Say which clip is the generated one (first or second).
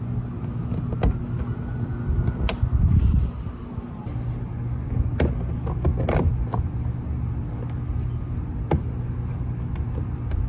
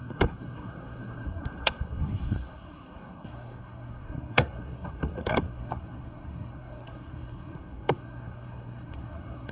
second